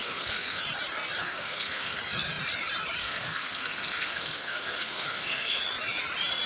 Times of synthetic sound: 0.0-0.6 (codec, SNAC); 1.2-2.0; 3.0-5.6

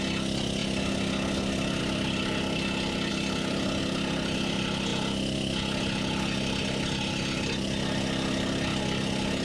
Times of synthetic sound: none

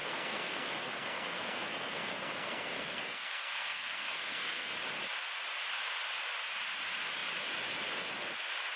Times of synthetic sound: 0.0-4.7 (codec, SNAC)

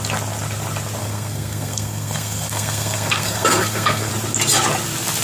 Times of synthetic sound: 1.0-4.1 (codec, SNAC)